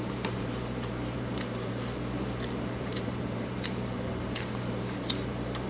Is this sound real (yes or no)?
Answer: no